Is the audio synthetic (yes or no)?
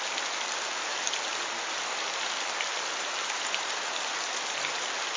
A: no